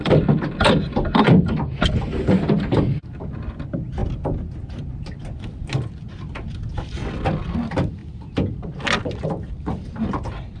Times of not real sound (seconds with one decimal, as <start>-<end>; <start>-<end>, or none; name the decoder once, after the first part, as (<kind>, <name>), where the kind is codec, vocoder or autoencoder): none